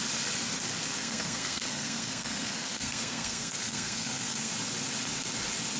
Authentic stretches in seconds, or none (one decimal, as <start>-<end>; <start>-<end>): 0.0-1.0; 4.5-5.8